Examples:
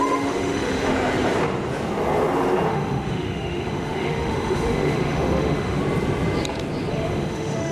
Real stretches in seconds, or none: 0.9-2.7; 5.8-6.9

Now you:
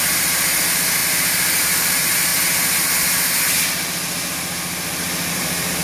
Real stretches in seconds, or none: 1.0-1.6; 2.3-5.3

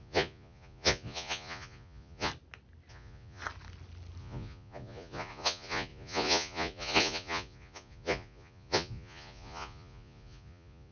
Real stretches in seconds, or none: 2.3-2.9; 3.4-4.2